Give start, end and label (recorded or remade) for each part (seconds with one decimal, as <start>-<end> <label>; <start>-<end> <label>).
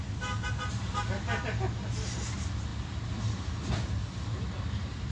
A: 0.0-5.1 recorded